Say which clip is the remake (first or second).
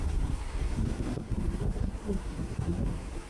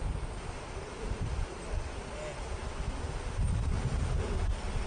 first